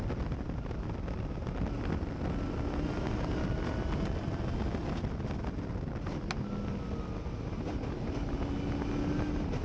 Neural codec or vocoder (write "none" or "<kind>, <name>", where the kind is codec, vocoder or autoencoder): none